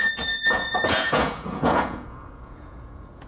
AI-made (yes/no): yes